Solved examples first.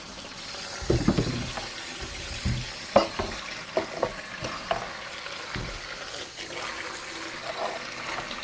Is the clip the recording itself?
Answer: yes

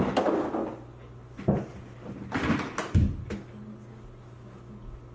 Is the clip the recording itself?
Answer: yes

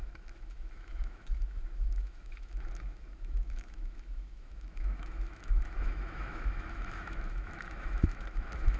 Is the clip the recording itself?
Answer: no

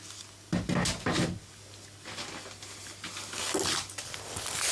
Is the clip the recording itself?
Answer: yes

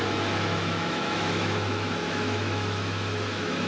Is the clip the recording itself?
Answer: no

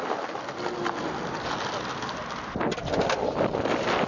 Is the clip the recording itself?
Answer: yes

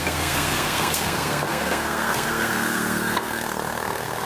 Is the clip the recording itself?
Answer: no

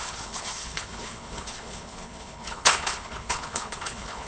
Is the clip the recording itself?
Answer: no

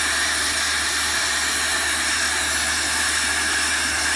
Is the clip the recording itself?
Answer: yes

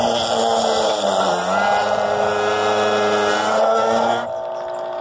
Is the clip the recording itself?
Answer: yes